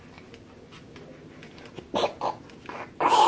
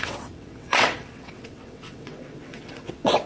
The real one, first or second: first